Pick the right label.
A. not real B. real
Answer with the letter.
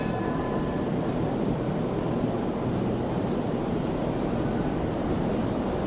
A